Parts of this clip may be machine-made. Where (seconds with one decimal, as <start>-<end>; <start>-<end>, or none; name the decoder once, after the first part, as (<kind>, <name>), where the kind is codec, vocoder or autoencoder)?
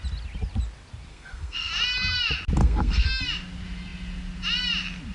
1.1-1.7 (codec, SNAC); 2.6-3.2